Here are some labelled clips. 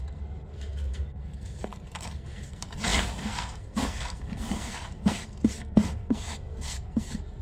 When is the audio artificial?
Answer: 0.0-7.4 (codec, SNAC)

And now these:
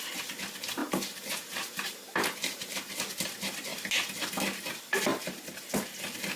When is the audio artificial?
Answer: 0.8-3.0 (vocoder, BigVGAN v2); 5.1-6.0